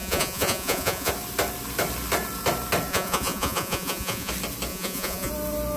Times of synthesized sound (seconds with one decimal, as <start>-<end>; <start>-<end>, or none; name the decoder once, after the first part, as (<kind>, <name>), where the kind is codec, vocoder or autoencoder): 0.0-1.1 (vocoder, Vocos); 2.9-4.3; 4.7-5.3